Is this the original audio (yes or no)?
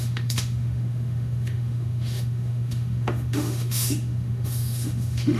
no